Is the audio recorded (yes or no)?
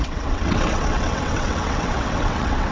no